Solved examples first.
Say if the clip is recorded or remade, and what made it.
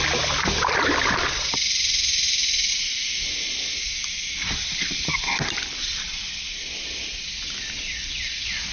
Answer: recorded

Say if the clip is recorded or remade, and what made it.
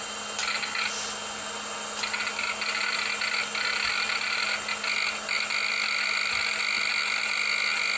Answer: recorded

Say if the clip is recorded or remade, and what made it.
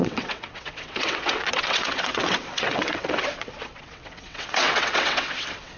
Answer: remade, vocoder, WaveNeXt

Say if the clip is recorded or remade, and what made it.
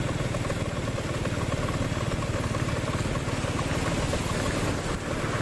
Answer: recorded